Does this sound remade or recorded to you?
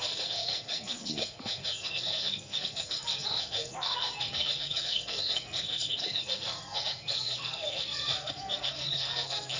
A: remade